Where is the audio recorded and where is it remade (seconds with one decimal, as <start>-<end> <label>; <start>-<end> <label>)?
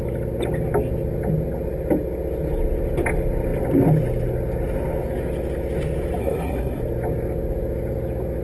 0.0-6.2 recorded; 6.2-6.8 remade; 6.8-8.4 recorded